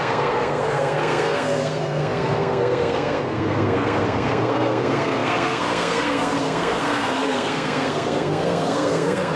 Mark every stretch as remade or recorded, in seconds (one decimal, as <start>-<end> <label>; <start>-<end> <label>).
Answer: 0.0-9.4 remade